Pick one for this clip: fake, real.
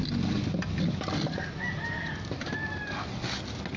real